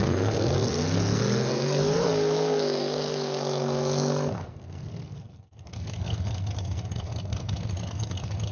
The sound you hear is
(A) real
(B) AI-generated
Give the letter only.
B